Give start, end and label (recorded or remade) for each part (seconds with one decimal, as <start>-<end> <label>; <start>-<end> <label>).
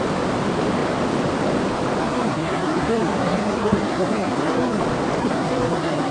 0.0-2.0 recorded; 2.0-4.8 remade; 4.8-5.2 recorded; 5.2-6.1 remade